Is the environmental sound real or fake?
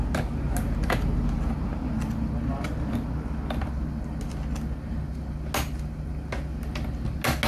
real